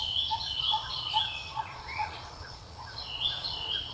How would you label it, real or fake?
fake